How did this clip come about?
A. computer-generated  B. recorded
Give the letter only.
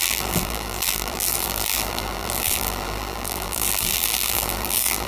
A